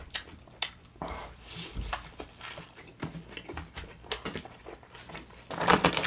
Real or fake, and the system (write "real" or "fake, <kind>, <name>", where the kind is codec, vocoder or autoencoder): real